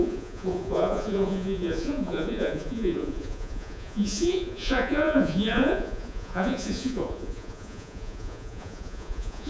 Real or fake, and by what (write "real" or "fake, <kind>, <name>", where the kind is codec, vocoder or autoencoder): fake, vocoder, Vocos